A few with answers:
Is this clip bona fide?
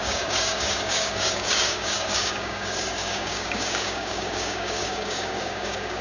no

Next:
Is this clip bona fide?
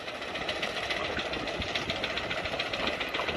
yes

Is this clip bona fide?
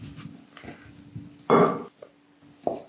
yes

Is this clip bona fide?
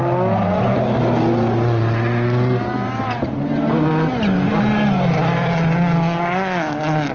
yes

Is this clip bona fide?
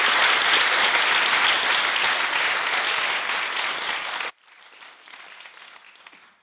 yes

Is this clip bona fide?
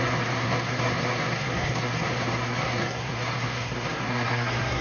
no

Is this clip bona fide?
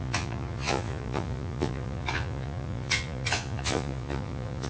no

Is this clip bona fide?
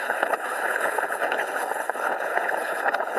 no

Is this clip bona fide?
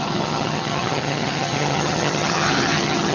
no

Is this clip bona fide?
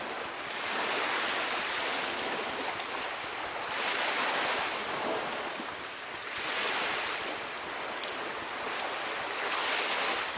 yes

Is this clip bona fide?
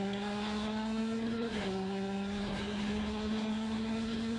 no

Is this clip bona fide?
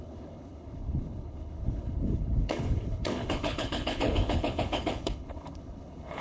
no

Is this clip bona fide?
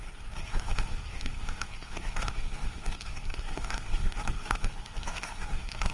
no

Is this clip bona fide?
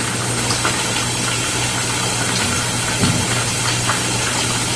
yes